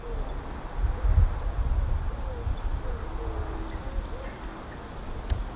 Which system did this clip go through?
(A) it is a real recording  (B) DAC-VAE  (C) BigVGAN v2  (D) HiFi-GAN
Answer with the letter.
A